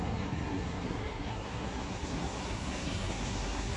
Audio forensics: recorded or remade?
remade